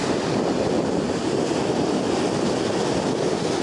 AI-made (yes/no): no